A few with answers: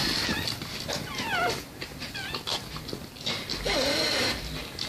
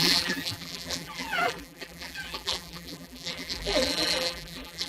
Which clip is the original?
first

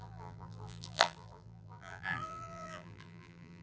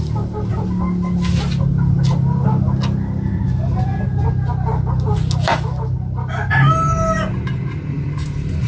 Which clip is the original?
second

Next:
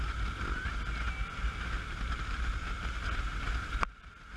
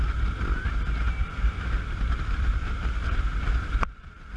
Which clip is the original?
first